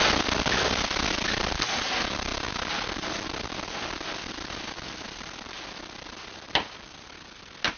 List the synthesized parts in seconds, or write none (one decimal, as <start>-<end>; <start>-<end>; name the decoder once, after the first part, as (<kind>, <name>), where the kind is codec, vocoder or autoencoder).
none